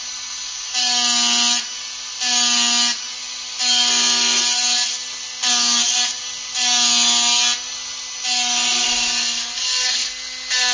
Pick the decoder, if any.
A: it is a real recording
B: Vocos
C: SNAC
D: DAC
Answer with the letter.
A